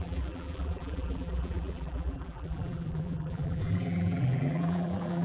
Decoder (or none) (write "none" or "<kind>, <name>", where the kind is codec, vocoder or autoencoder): vocoder, BigVGAN v2